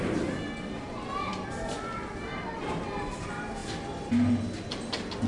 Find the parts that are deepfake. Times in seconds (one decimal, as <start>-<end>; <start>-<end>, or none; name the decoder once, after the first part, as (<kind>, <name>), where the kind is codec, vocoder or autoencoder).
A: none